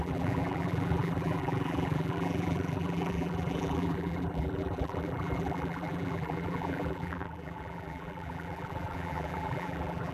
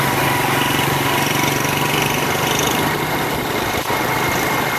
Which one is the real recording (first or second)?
second